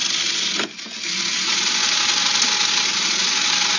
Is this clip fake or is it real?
real